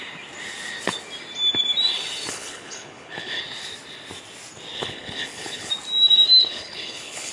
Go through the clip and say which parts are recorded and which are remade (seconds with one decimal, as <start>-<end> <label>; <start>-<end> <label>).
0.0-2.3 recorded; 2.3-3.4 remade; 3.4-4.8 recorded; 4.8-5.7 remade; 5.7-6.4 recorded; 6.4-7.3 remade